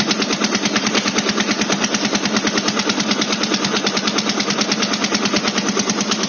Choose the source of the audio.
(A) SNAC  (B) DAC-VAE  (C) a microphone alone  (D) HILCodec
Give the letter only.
C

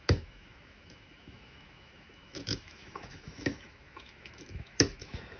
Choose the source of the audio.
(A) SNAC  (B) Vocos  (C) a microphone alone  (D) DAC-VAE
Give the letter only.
D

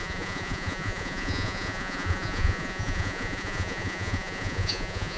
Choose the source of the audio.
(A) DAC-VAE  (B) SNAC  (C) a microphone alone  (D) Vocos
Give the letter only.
D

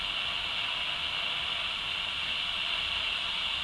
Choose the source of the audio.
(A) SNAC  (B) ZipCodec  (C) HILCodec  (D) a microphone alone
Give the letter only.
D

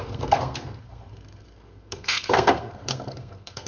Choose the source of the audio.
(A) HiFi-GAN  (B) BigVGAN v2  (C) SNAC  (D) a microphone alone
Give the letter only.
C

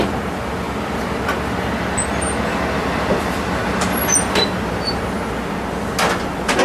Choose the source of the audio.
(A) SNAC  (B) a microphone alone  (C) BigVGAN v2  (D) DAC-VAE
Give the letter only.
B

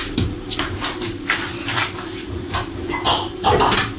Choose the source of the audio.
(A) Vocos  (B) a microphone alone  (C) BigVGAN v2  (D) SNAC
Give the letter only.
B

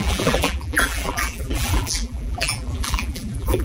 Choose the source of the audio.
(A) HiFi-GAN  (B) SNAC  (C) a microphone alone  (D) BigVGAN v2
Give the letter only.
D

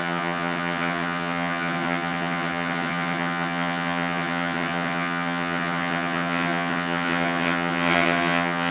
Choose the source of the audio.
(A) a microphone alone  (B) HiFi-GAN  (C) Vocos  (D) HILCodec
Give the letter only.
B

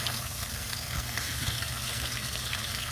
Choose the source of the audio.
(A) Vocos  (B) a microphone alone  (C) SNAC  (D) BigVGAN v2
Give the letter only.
C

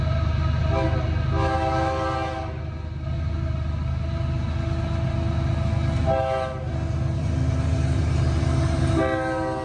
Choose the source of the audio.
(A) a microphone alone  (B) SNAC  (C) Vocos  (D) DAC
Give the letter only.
A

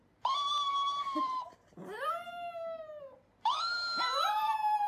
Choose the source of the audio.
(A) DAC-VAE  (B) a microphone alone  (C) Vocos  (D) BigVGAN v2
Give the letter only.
D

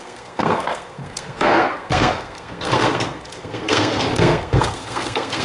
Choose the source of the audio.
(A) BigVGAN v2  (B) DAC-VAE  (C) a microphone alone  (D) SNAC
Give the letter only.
D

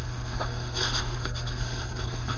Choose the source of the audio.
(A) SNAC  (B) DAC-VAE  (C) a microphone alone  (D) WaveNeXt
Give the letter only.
A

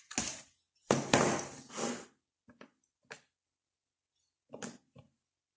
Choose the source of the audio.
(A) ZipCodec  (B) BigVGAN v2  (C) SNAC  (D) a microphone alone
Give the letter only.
D